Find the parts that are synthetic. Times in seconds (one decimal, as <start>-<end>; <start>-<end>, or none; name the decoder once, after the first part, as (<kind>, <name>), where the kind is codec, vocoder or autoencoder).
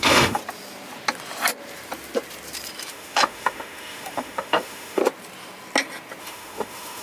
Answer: 0.0-0.4 (autoencoder, DAC-VAE); 2.9-5.0; 6.2-7.0